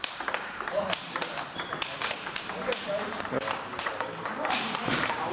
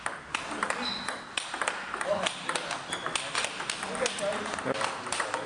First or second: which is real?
second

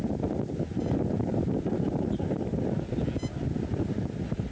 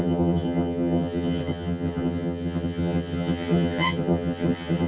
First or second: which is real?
first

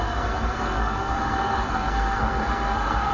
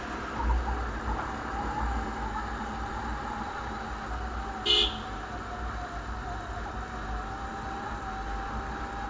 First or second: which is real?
second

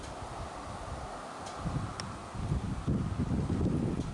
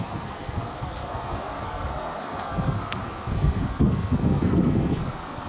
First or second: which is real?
first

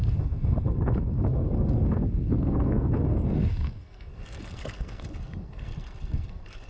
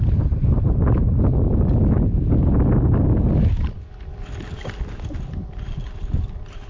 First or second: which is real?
second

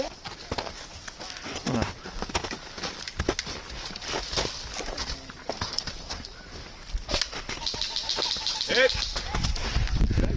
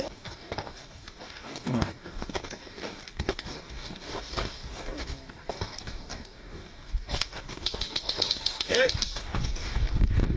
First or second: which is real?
first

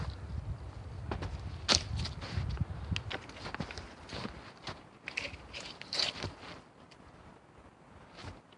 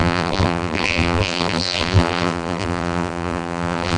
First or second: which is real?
first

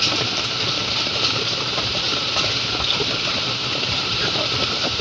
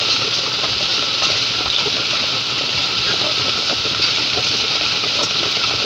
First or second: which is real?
second